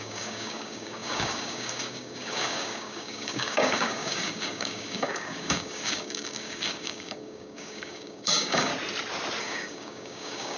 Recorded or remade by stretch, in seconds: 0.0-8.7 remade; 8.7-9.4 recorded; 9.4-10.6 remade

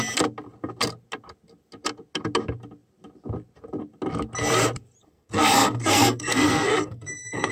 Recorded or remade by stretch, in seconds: 0.0-5.0 recorded; 5.0-7.5 remade

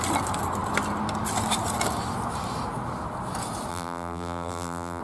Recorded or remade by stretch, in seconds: 0.0-3.7 recorded; 3.7-5.0 remade

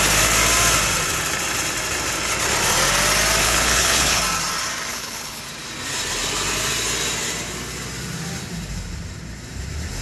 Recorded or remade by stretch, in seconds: 0.0-3.4 recorded; 3.4-4.2 remade; 4.2-4.9 recorded; 4.9-5.4 remade; 5.4-10.0 recorded

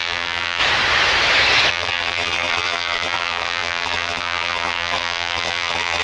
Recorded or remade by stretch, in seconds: 0.0-0.6 remade; 0.6-1.7 recorded; 1.7-6.0 remade